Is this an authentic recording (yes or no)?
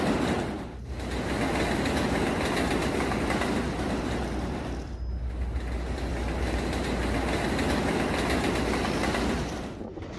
yes